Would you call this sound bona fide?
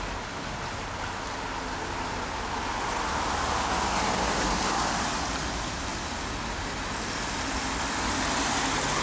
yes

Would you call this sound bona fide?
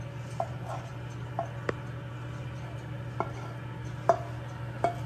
yes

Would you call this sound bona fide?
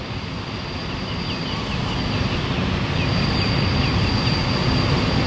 yes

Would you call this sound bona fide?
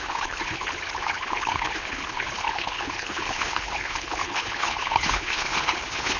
no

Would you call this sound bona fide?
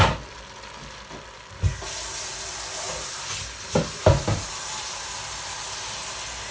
yes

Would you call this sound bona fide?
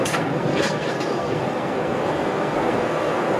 no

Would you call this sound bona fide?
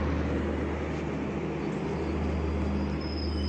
yes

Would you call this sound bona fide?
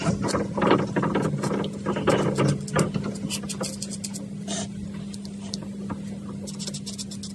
yes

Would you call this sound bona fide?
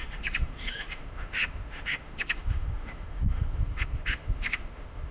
no